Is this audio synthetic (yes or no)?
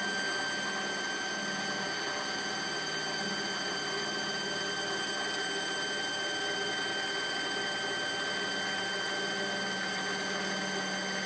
no